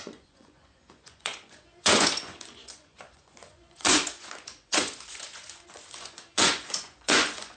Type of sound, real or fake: fake